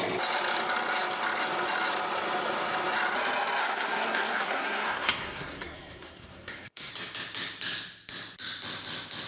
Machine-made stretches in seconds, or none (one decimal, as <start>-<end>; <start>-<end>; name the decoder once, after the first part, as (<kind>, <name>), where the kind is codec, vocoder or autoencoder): 3.6-6.9 (codec, SNAC)